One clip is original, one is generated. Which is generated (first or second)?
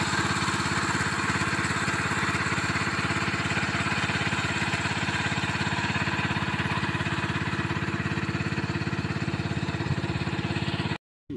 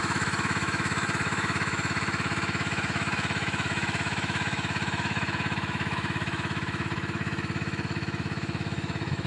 second